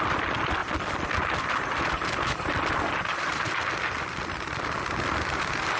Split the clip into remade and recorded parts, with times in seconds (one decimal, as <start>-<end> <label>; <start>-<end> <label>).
0.0-5.8 recorded